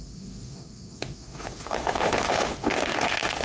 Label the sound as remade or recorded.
remade